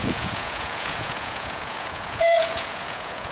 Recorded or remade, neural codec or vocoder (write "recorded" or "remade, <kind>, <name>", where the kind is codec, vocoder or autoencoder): remade, vocoder, Vocos